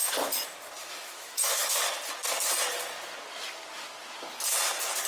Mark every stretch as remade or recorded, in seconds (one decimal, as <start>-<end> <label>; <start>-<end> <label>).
0.0-0.8 recorded; 0.8-1.7 remade; 1.7-5.1 recorded